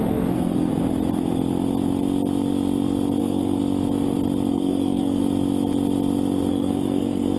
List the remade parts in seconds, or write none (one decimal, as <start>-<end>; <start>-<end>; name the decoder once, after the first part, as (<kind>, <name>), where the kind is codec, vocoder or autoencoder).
0.0-0.7 (codec, SNAC); 3.2-3.6; 4.5-5.2; 6.5-7.4